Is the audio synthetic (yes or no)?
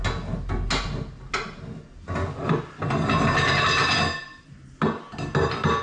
no